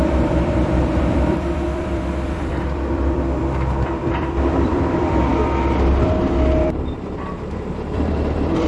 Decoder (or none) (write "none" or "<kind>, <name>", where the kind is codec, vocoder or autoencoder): vocoder, BigVGAN v2